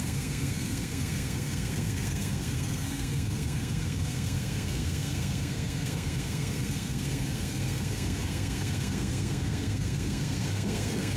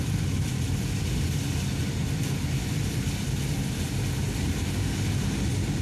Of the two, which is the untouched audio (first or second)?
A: second